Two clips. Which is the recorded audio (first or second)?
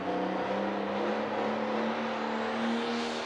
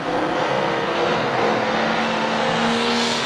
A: first